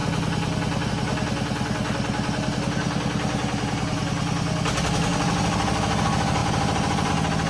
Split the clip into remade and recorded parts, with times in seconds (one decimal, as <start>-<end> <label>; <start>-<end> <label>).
0.0-6.4 recorded; 6.4-7.1 remade; 7.1-7.5 recorded